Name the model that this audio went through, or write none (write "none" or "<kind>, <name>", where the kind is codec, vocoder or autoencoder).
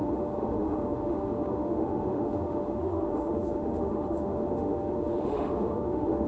autoencoder, DAC-VAE